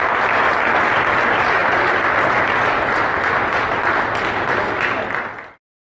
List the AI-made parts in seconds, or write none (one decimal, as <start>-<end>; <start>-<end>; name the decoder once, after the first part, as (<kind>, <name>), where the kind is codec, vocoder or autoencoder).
none

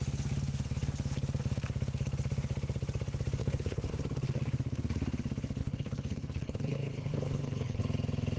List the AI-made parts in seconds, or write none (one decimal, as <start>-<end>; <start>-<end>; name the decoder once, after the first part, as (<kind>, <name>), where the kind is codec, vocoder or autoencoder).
3.4-3.9 (codec, HILCodec); 5.6-7.8